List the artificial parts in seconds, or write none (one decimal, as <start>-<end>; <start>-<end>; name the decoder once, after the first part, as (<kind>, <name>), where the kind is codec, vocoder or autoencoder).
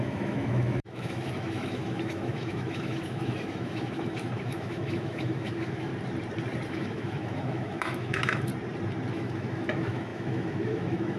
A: 0.0-5.9 (autoencoder, DAC-VAE); 6.7-8.5; 9.1-11.2